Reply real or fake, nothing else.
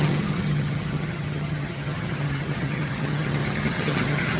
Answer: fake